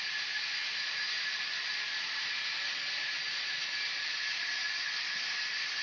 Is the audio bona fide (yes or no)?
yes